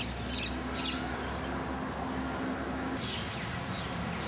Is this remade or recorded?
recorded